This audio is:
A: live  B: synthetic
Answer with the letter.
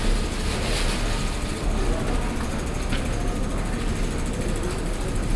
A